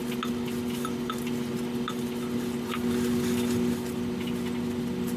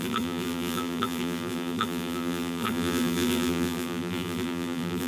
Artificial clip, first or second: second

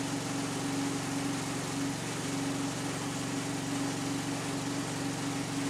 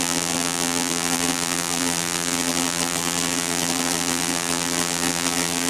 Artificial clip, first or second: second